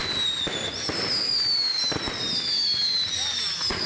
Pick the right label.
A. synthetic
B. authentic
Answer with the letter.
B